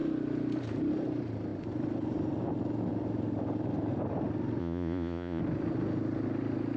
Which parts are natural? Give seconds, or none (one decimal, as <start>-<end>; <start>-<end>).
0.0-4.6; 5.4-6.8